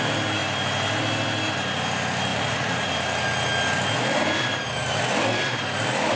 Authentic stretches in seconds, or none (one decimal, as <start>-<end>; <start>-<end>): 0.0-2.3; 2.9-6.2